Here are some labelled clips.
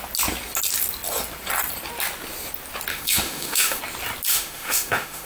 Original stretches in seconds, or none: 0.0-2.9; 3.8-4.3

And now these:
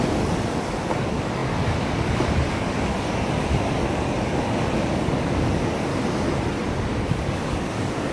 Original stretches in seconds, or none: 5.9-7.0

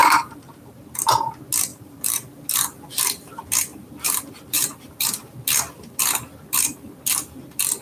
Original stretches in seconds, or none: 0.8-1.7; 2.3-3.7; 4.8-7.8

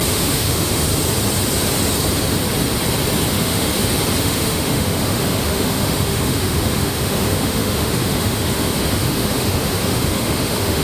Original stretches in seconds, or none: 0.9-3.3; 3.7-4.2

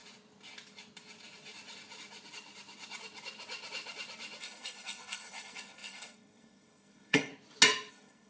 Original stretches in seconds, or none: 0.0-4.4; 7.3-7.9

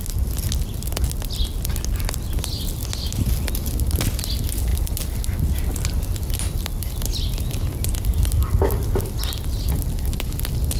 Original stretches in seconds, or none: 0.0-10.8